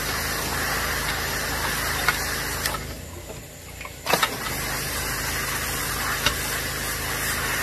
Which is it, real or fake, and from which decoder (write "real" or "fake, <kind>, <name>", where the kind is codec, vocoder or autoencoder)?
real